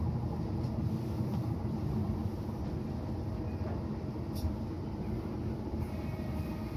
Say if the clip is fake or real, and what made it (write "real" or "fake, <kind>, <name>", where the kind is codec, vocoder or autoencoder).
real